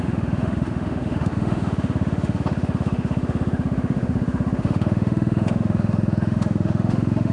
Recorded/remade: remade